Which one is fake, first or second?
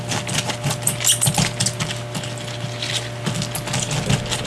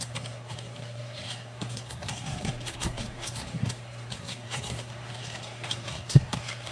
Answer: second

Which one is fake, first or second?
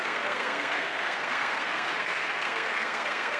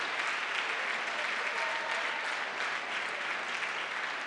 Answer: first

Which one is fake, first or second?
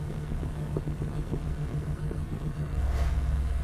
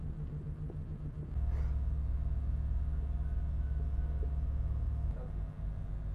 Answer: first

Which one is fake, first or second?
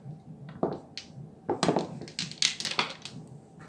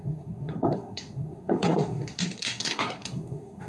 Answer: second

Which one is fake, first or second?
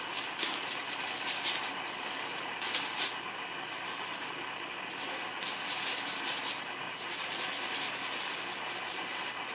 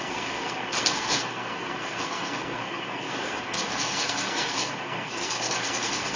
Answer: second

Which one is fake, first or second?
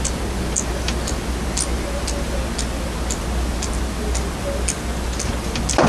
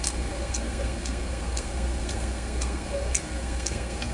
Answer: second